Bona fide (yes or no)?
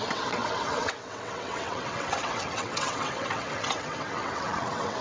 no